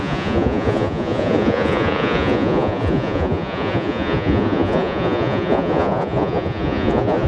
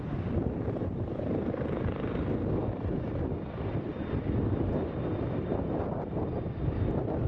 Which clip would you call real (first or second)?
second